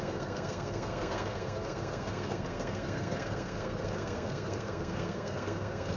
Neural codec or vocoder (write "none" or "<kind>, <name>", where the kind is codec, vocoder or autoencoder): codec, SNAC